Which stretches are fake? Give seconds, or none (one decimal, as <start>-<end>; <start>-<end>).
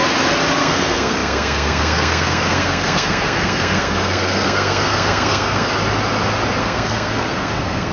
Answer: 0.6-5.7; 6.6-7.9